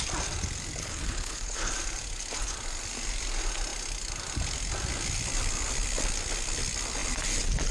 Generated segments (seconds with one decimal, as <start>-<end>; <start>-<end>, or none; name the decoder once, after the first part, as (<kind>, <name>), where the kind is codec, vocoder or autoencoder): 0.8-1.7 (codec, HILCodec)